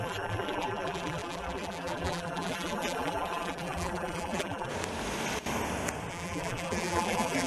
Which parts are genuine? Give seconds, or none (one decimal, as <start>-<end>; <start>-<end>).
4.7-6.1